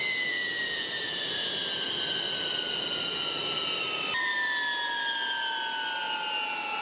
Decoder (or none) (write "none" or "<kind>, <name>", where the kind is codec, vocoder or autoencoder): none